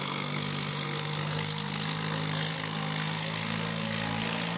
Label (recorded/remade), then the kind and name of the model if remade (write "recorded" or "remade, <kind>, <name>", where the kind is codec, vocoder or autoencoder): remade, codec, SNAC